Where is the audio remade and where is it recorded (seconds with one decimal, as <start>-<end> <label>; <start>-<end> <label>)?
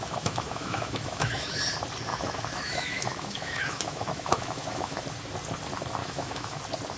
0.0-1.5 remade; 1.5-2.1 recorded; 2.1-5.0 remade; 5.0-6.0 recorded; 6.0-6.6 remade; 6.6-7.0 recorded